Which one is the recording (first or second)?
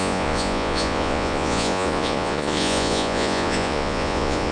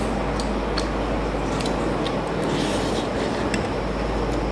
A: second